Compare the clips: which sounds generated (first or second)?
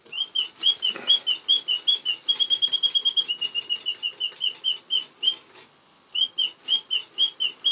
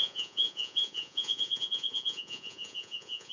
second